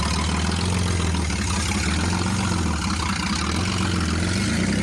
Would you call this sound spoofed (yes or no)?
no